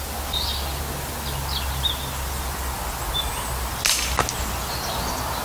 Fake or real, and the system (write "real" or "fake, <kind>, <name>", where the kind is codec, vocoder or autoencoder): real